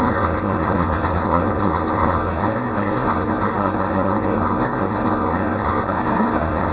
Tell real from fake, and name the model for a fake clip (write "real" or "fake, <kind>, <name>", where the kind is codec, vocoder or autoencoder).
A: fake, codec, SNAC